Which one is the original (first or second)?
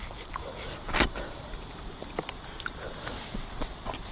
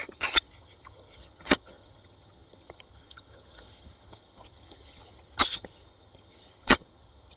first